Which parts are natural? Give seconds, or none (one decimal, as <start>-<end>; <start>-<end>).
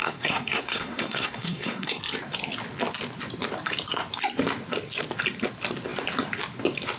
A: 2.0-7.0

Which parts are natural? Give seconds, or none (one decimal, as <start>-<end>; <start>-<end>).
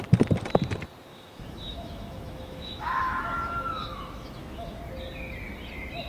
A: 0.0-1.1; 4.8-6.1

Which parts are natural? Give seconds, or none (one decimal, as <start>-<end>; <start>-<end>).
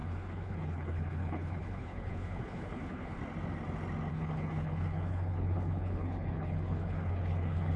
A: 3.2-4.1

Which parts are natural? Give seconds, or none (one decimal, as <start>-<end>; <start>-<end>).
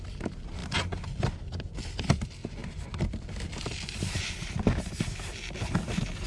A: 0.0-2.4; 4.9-6.3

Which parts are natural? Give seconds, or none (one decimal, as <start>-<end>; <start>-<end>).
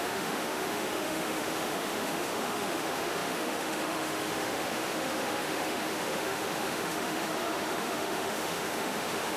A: none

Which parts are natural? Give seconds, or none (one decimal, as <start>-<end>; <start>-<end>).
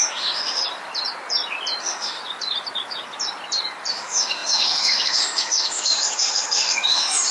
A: 0.6-1.8; 2.2-3.9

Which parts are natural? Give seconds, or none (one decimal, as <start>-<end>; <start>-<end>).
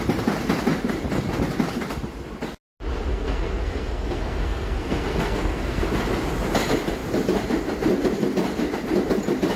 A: 0.0-3.1; 5.9-9.6